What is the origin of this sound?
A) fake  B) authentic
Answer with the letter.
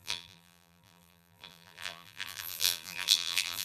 A